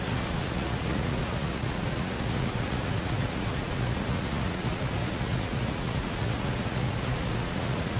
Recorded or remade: remade